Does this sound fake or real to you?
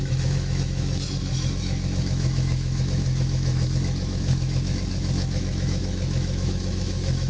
fake